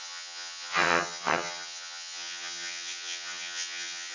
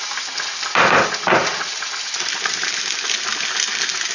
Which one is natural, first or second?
second